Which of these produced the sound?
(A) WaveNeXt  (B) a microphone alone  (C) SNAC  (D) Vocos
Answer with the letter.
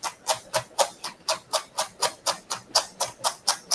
B